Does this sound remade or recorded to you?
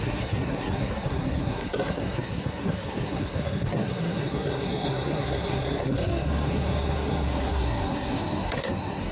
remade